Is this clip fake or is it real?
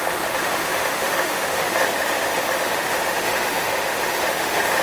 fake